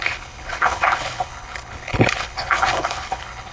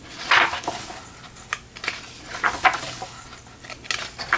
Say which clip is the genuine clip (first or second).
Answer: second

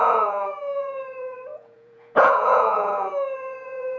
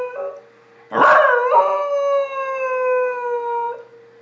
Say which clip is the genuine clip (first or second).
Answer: second